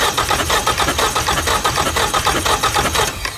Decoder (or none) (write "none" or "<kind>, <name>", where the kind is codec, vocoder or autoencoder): vocoder, BigVGAN v2